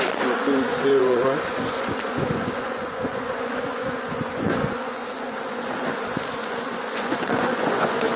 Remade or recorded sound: remade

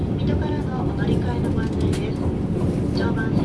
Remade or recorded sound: recorded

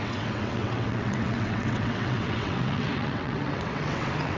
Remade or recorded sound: remade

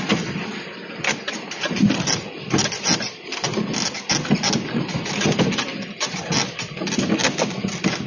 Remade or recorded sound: recorded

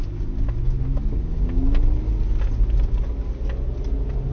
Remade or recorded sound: recorded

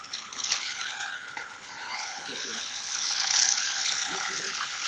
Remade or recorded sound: remade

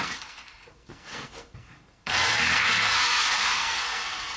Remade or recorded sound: remade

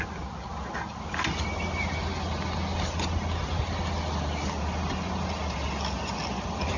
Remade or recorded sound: recorded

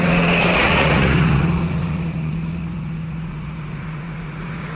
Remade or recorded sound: remade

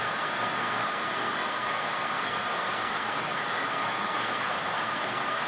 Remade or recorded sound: remade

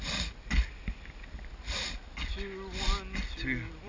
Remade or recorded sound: recorded